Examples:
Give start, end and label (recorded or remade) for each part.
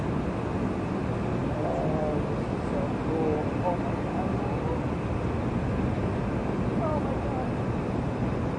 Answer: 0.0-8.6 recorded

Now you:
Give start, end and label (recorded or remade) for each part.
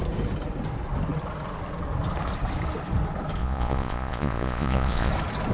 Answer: 0.0-3.4 recorded; 3.4-5.1 remade; 5.1-5.5 recorded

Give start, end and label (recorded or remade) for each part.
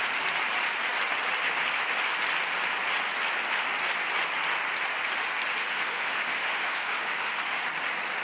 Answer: 0.0-5.6 recorded; 5.6-7.6 remade; 7.6-8.2 recorded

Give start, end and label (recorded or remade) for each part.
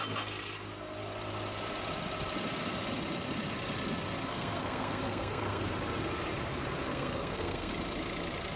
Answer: 0.0-4.3 recorded; 4.3-5.6 remade; 5.6-6.9 recorded; 6.9-7.7 remade; 7.7-8.6 recorded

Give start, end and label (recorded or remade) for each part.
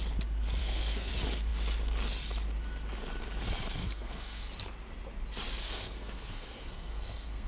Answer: 0.0-0.6 recorded; 0.6-1.1 remade; 1.1-3.8 recorded; 3.8-4.5 remade; 4.5-5.6 recorded; 5.6-7.5 remade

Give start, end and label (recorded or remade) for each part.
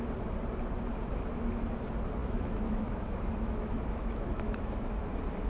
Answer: 0.0-2.2 recorded; 2.2-5.0 remade; 5.0-5.5 recorded